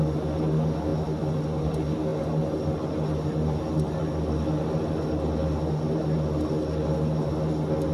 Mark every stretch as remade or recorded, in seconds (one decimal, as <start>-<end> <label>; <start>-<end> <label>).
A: 0.0-7.9 recorded